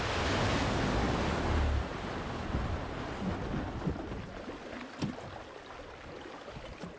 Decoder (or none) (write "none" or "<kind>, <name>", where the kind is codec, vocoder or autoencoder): none